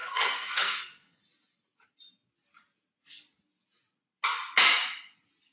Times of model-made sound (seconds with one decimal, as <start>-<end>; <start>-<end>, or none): 0.0-1.2